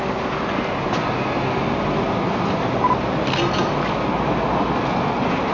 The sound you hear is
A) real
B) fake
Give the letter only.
A